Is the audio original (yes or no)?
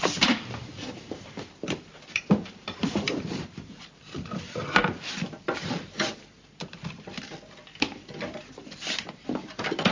no